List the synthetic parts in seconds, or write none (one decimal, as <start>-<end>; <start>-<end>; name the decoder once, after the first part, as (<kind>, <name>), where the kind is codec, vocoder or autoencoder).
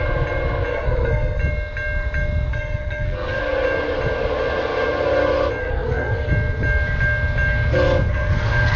0.7-1.4 (codec, SNAC); 2.5-3.4; 5.6-6.3; 8.1-8.8